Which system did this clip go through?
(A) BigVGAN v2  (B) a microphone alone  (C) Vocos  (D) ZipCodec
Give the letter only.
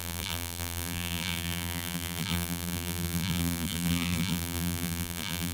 A